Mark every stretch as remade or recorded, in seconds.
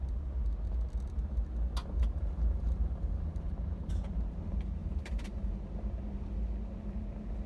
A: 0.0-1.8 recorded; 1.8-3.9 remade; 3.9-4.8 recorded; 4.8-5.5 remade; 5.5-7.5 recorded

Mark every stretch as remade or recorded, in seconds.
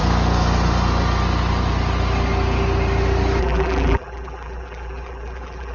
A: 0.0-3.4 recorded; 3.4-5.7 remade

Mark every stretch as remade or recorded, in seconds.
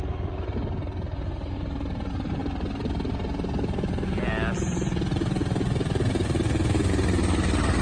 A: 0.0-2.4 recorded; 2.4-6.9 remade; 6.9-7.8 recorded